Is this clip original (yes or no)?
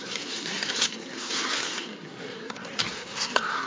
no